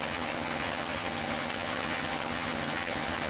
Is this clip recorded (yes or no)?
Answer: no